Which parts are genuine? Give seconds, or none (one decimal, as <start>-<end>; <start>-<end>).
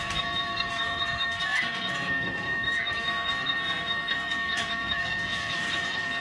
none